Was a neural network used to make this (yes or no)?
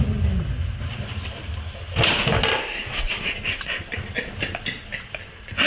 no